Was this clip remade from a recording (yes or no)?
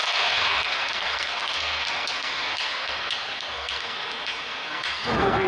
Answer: yes